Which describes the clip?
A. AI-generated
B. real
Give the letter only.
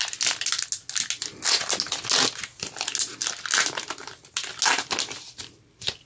B